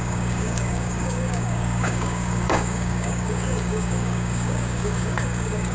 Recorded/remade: remade